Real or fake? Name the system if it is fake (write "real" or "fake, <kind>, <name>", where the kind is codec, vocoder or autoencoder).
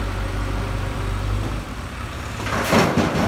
fake, vocoder, BigVGAN v2